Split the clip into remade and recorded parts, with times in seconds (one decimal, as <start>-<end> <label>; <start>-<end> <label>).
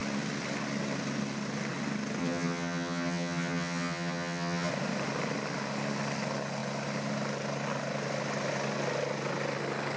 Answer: 0.0-2.2 recorded; 2.2-4.7 remade; 4.7-10.0 recorded